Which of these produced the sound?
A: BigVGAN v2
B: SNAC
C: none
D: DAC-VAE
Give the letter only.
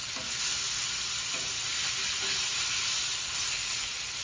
C